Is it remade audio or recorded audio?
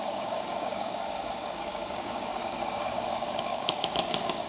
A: remade